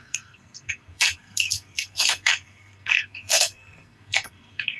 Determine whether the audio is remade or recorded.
remade